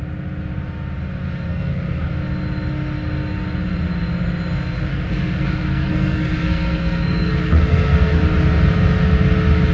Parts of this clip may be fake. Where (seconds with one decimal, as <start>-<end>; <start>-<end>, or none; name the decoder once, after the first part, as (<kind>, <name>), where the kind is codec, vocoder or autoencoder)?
1.5-2.1 (codec, SNAC); 4.9-8.2